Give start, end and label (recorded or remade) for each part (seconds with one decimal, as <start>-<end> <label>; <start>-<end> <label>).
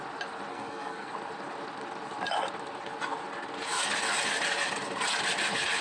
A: 0.0-0.5 recorded; 0.5-1.1 remade; 1.1-5.8 recorded